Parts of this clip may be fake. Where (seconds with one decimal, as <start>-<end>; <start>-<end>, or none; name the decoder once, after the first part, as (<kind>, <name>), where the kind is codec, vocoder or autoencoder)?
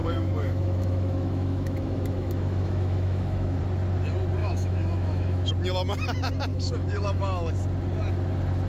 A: 0.0-3.6 (autoencoder, DAC-VAE); 4.4-5.5; 6.5-7.5